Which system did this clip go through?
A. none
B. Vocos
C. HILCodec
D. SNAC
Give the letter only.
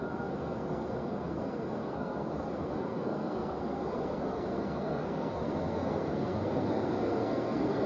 D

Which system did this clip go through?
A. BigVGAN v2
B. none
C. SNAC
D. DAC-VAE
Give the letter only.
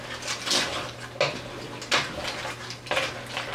B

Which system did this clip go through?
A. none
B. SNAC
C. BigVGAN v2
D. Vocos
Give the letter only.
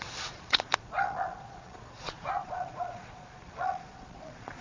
D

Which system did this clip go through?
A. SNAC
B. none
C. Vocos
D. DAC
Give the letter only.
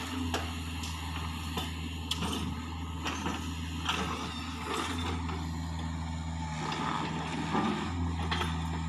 B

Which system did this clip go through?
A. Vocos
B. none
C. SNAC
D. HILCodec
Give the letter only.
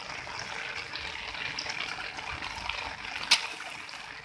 B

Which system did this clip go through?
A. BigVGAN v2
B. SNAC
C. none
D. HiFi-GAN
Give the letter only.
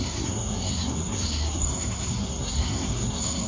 B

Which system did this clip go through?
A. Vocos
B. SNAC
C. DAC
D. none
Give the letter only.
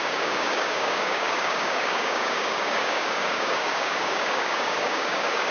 C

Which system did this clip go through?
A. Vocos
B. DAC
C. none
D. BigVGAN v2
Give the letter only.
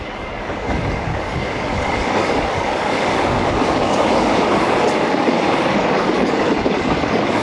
B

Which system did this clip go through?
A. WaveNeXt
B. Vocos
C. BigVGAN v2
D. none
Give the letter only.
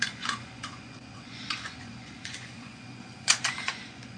B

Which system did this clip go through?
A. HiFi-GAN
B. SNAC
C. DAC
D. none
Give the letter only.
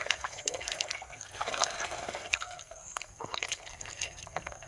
B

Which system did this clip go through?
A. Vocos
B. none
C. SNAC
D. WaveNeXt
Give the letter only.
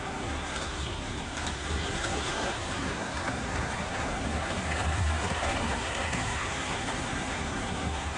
C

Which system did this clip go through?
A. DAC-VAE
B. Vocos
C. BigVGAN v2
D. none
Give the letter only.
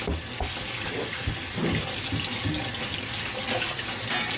D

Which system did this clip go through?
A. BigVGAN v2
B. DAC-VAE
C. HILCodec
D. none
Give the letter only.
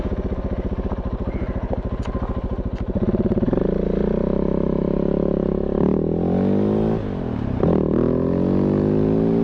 D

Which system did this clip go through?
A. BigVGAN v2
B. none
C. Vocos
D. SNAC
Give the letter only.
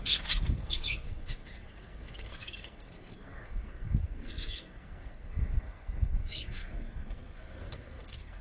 D